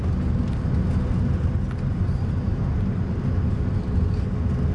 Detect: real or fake real